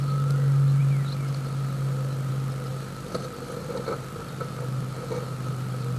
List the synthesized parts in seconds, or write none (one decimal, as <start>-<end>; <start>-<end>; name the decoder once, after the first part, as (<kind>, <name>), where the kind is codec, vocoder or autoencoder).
2.7-6.0 (vocoder, BigVGAN v2)